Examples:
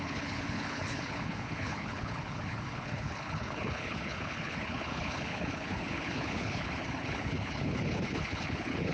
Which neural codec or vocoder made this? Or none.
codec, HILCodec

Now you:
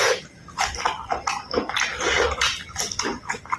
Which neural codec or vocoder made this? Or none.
none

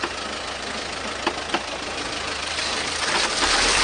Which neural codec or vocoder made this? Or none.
none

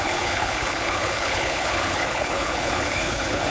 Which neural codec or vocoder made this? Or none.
codec, HILCodec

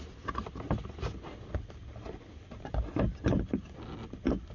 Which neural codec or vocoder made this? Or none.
none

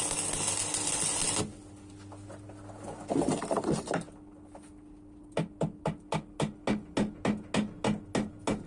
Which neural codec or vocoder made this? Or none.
none